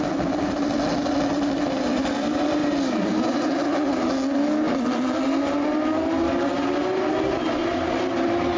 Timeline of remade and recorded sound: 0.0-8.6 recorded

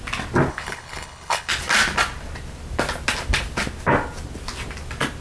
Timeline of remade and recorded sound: 0.0-0.5 recorded; 0.5-1.5 remade; 1.5-5.2 recorded

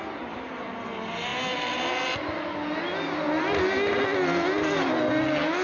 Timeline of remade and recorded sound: 0.0-5.6 recorded

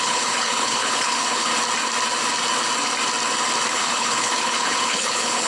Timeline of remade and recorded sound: 0.0-1.5 remade; 1.5-3.7 recorded; 3.7-5.5 remade

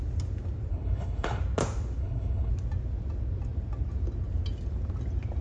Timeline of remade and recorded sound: 0.0-0.7 recorded; 0.7-1.4 remade; 1.4-2.0 recorded; 2.0-2.5 remade; 2.5-5.4 recorded

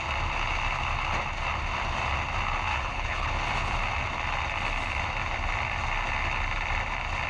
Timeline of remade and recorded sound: 0.0-2.7 recorded; 2.7-3.3 remade; 3.3-7.3 recorded

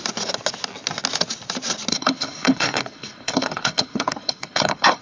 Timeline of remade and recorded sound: 0.0-1.9 recorded; 1.9-5.0 remade

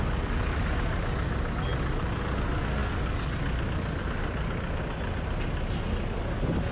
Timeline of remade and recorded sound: 0.0-6.7 recorded